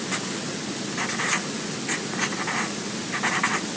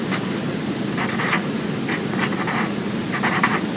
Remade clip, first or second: second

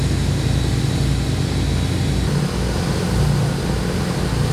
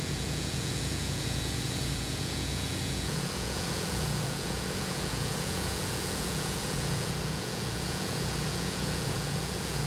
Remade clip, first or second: second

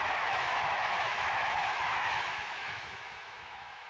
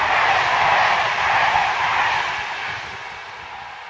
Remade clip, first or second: first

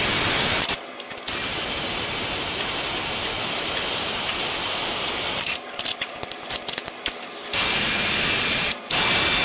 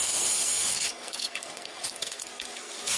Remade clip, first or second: second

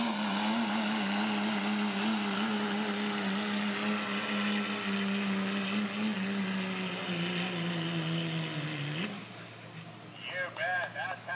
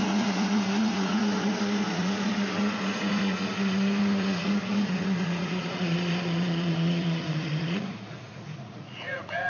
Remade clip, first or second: second